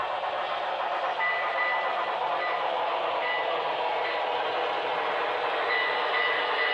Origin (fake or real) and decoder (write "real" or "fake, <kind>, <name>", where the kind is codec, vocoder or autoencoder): real